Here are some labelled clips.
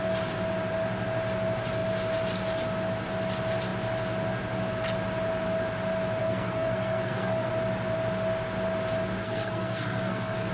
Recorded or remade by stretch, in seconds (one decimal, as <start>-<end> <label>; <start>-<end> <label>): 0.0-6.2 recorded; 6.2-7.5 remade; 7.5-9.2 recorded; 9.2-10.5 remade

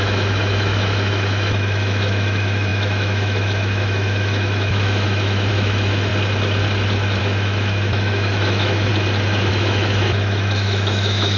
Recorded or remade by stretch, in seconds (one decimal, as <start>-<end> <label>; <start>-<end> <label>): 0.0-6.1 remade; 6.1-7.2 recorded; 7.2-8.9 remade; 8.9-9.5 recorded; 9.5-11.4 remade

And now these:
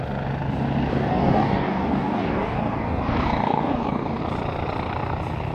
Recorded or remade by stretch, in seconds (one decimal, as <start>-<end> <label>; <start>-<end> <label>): 0.0-0.9 recorded; 0.9-4.2 remade; 4.2-5.5 recorded